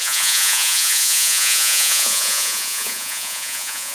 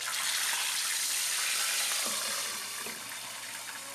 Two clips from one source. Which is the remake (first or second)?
first